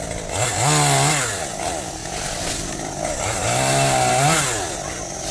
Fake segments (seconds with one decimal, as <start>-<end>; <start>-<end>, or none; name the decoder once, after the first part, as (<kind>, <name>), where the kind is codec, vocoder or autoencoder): none